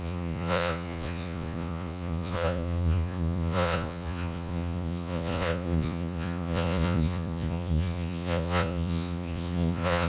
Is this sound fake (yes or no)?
yes